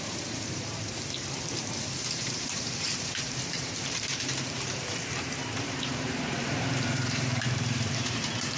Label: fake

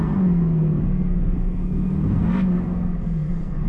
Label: fake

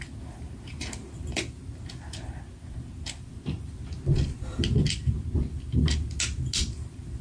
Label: real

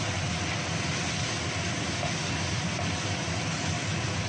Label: real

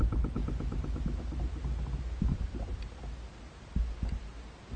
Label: real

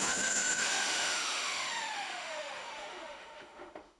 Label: fake